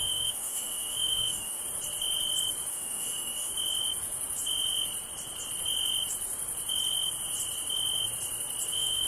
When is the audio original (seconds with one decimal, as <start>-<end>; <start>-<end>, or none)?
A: 1.6-2.7; 3.5-8.7